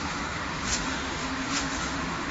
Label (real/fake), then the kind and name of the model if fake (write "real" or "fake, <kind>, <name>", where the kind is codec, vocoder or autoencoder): fake, autoencoder, DAC-VAE